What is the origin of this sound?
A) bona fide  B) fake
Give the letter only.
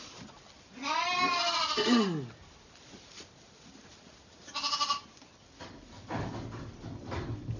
A